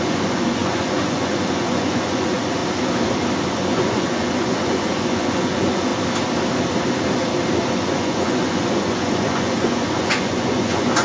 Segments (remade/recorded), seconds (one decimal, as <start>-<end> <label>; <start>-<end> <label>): 0.0-2.6 remade; 2.6-3.4 recorded; 3.4-5.9 remade; 5.9-7.7 recorded; 7.7-11.0 remade